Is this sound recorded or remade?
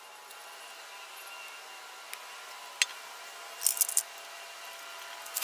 recorded